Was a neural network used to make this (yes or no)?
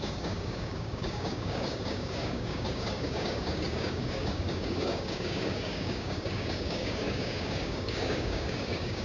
yes